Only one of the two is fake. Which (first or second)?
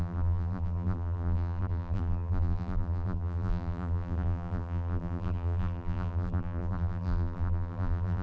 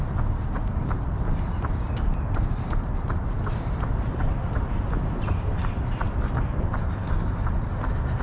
first